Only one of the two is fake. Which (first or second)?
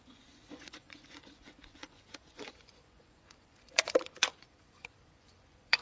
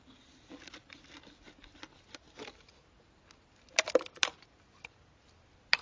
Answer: first